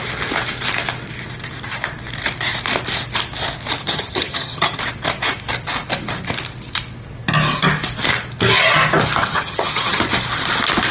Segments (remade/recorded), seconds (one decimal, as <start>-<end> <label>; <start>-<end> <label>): 0.0-3.8 recorded; 3.8-4.8 remade; 4.8-9.2 recorded; 9.2-10.0 remade; 10.0-10.9 recorded